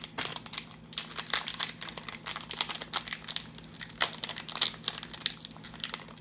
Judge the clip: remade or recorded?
recorded